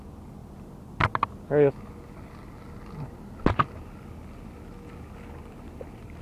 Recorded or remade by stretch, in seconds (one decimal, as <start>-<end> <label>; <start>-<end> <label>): 0.0-6.2 recorded